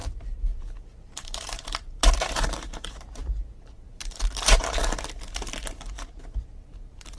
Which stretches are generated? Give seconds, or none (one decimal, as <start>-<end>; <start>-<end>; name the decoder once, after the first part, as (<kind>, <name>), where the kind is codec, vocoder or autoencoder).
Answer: 0.0-4.8 (vocoder, BigVGAN v2); 5.7-7.2